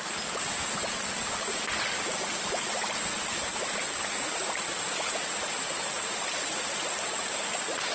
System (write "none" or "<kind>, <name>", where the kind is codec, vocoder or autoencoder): none